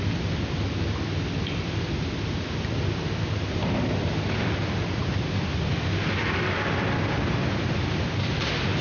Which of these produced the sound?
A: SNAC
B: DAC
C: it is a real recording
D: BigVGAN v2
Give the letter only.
C